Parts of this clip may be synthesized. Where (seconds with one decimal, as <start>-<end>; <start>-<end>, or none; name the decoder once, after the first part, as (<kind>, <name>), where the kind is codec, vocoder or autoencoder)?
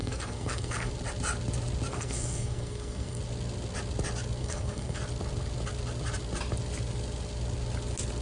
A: 0.0-0.9 (codec, SNAC); 1.9-3.2; 4.4-5.0